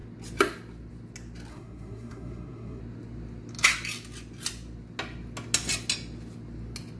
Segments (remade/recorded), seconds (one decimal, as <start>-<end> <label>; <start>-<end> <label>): 0.0-1.5 recorded; 1.5-2.8 remade; 2.8-7.0 recorded

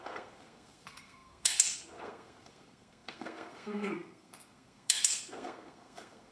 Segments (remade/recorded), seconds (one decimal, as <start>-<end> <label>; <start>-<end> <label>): 0.0-6.3 remade

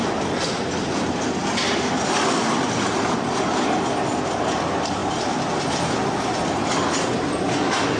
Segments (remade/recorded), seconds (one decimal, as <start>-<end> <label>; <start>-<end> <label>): 0.0-8.0 recorded

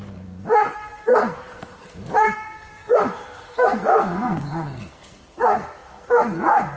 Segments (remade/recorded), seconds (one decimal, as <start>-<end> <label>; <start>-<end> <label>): 0.0-6.8 remade

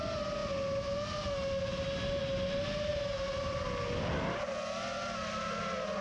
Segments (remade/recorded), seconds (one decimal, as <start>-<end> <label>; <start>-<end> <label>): 0.0-6.0 recorded

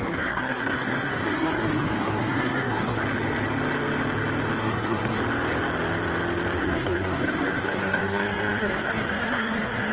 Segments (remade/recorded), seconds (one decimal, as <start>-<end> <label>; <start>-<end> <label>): 0.0-3.0 remade; 3.0-4.6 recorded; 4.6-5.2 remade; 5.2-6.6 recorded; 6.6-9.9 remade

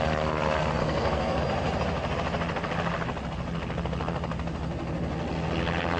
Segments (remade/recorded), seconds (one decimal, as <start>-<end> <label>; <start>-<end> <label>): 0.0-0.8 recorded; 0.8-1.4 remade; 1.4-6.0 recorded